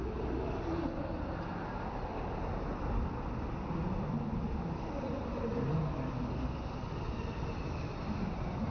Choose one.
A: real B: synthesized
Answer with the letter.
A